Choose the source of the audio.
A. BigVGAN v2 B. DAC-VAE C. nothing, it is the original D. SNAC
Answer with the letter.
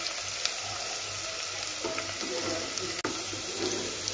C